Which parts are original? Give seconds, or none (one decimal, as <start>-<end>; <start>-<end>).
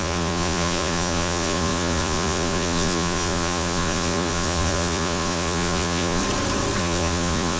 6.2-6.8